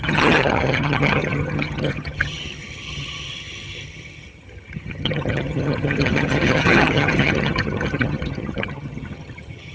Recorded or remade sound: remade